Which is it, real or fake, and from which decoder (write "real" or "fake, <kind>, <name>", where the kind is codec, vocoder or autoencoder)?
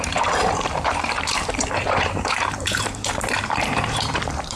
fake, vocoder, BigVGAN v2